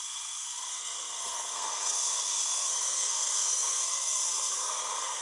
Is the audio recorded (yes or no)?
no